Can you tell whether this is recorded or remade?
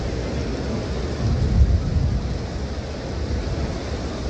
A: recorded